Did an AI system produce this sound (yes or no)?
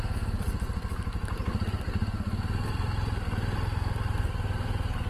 no